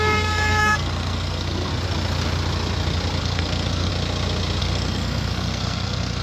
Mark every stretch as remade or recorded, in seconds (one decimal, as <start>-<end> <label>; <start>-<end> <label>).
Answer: 0.0-1.7 remade; 1.7-3.2 recorded; 3.2-3.9 remade; 3.9-4.6 recorded; 4.6-6.2 remade